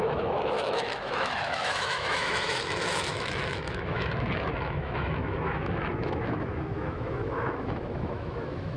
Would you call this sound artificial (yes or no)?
yes